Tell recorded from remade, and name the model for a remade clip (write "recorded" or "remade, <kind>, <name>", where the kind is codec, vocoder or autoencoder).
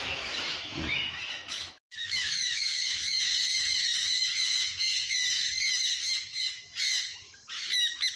remade, autoencoder, DAC-VAE